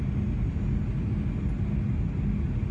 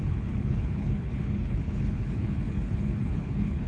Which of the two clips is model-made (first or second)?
second